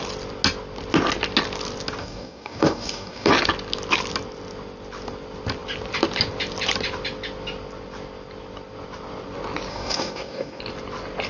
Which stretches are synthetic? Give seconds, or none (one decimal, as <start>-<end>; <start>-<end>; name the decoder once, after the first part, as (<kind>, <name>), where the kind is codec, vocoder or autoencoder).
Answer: 2.0-3.3 (codec, DAC); 9.7-10.6